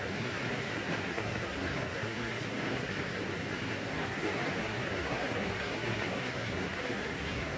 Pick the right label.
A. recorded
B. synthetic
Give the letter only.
B